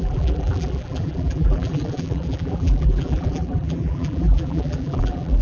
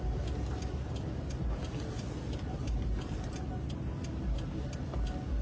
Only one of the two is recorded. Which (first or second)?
second